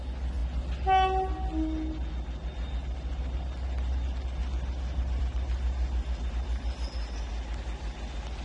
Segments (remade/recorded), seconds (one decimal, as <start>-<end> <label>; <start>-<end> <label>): 0.0-8.4 recorded